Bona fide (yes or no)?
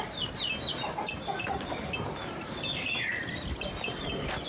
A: yes